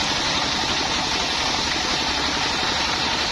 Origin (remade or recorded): recorded